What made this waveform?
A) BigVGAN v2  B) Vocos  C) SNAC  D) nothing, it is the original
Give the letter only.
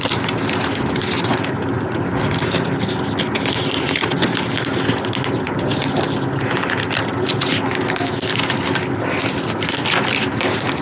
D